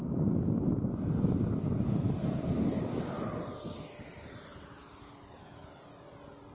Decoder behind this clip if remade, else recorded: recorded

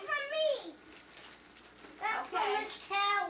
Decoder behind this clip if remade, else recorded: recorded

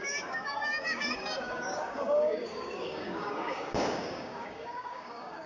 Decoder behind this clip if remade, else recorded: remade, codec, DAC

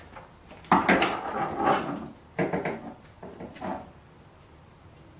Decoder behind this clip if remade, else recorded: recorded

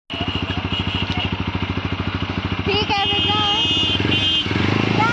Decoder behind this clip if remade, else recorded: recorded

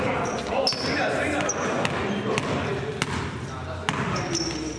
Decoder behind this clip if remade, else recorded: recorded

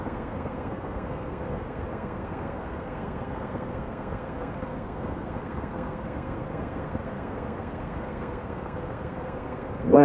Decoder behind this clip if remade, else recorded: remade, codec, SNAC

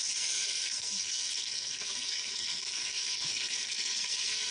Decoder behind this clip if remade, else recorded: remade, codec, SNAC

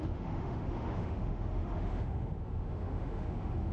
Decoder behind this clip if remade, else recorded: remade, autoencoder, DAC-VAE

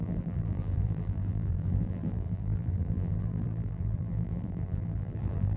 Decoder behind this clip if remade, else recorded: remade, vocoder, BigVGAN v2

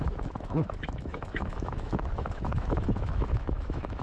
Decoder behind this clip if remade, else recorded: remade, autoencoder, DAC-VAE